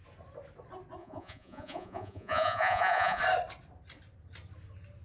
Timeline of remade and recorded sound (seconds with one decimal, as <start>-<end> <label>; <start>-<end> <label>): 0.0-1.0 recorded; 1.0-3.2 remade; 3.2-5.0 recorded